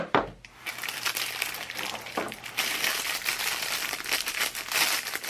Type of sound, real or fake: fake